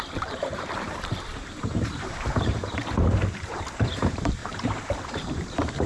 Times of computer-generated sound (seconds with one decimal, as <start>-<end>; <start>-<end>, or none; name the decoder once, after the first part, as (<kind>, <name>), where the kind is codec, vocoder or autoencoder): 0.0-5.9 (vocoder, BigVGAN v2)